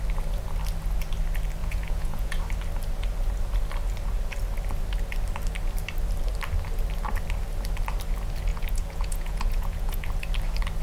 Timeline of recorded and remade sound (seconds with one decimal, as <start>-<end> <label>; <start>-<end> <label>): 0.0-1.6 recorded; 1.6-2.4 remade; 2.4-8.5 recorded; 8.5-10.1 remade; 10.1-10.8 recorded